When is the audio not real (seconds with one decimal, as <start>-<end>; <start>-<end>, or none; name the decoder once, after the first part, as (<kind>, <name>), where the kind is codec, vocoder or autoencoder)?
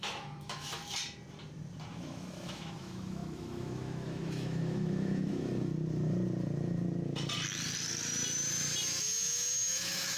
0.0-0.8 (autoencoder, DAC-VAE); 1.9-5.7; 9.0-10.2